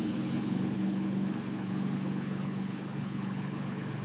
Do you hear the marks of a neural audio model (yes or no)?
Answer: yes